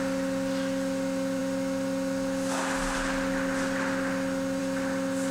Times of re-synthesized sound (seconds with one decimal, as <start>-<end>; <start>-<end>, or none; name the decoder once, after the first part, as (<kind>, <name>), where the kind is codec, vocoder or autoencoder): none